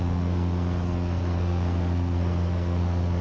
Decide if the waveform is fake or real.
fake